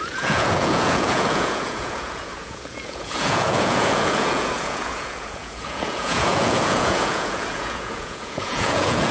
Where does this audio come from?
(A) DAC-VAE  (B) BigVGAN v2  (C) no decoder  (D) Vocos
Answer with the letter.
D